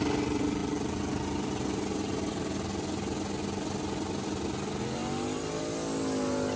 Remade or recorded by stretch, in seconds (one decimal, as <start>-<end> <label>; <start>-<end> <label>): 0.0-6.6 recorded